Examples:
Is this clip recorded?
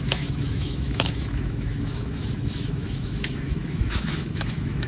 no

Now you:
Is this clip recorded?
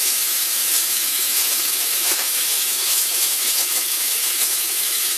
no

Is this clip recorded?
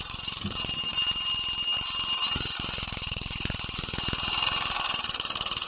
no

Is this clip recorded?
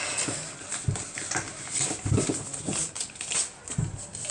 yes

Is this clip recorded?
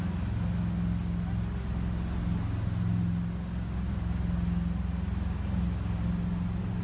yes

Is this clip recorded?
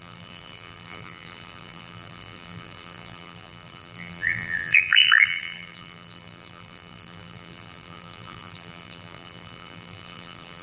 no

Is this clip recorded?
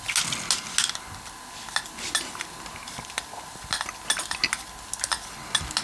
yes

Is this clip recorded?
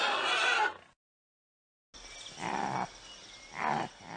yes